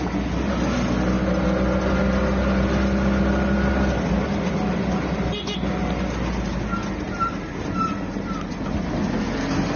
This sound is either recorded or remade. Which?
recorded